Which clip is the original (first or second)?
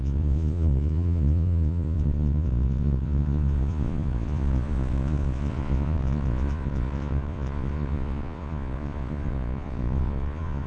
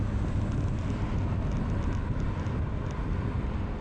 second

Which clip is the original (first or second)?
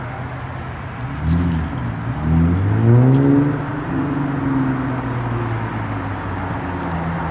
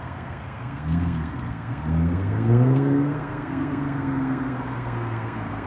first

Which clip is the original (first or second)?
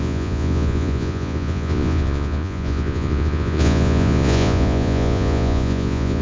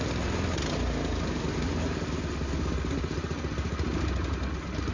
second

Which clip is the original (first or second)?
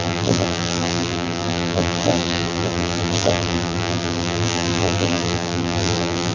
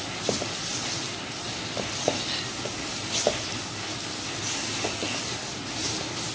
second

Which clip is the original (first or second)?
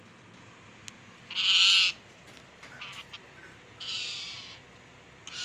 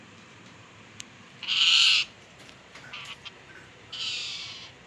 first